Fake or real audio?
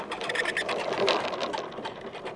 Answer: real